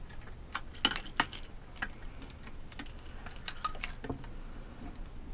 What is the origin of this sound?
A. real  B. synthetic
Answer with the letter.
A